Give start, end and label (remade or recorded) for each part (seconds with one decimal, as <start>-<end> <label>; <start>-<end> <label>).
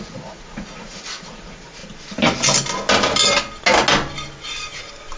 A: 0.0-1.8 remade; 1.8-5.2 recorded